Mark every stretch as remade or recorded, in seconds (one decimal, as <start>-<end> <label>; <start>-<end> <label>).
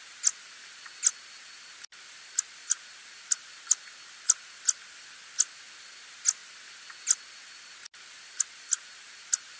0.0-9.6 recorded